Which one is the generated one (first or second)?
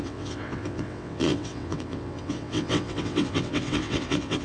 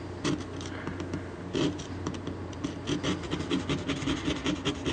first